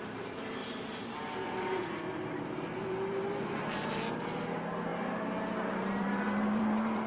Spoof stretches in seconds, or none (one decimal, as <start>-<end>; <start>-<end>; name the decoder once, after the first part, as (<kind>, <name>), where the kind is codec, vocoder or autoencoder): 0.0-4.9 (vocoder, BigVGAN v2); 5.7-7.1